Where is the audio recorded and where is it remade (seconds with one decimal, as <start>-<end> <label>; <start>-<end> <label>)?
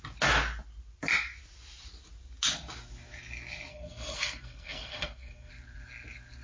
0.0-3.7 recorded; 3.7-5.5 remade; 5.5-6.4 recorded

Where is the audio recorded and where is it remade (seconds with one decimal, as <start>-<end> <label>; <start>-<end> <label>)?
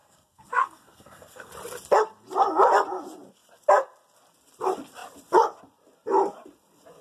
0.0-1.5 remade; 1.5-7.0 recorded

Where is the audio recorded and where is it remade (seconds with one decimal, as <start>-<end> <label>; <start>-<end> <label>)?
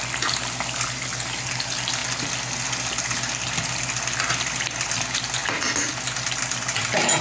0.0-7.2 recorded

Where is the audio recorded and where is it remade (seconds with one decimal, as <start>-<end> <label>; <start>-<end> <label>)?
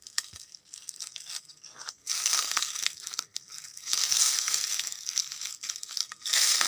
0.0-6.7 remade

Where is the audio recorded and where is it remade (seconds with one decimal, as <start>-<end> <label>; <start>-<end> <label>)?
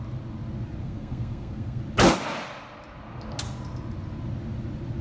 0.0-0.8 recorded; 0.8-1.8 remade; 1.8-5.0 recorded